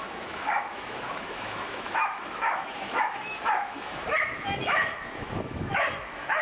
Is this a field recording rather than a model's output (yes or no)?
no